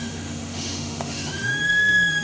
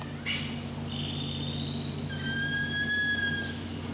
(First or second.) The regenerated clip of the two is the first